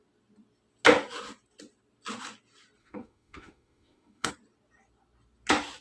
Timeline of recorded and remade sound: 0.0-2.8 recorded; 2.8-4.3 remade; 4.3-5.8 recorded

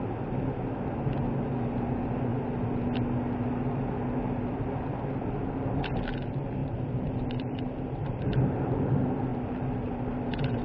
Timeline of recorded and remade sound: 0.0-6.6 recorded; 6.6-8.9 remade; 8.9-9.3 recorded; 9.3-10.6 remade

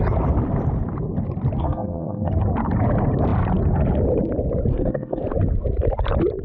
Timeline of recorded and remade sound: 0.0-1.6 recorded; 1.6-2.3 remade; 2.3-4.7 recorded; 4.7-5.2 remade; 5.2-6.4 recorded